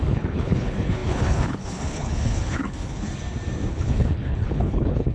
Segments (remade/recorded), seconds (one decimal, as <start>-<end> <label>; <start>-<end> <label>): 0.0-3.1 remade; 3.1-3.7 recorded; 3.7-5.1 remade